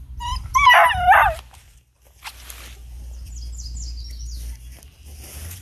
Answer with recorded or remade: recorded